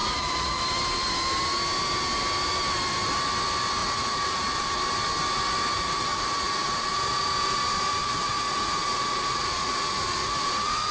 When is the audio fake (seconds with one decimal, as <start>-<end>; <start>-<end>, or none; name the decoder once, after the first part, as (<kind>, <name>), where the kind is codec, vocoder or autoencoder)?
0.0-0.6 (vocoder, Vocos); 3.8-4.8; 5.7-7.0; 8.0-10.9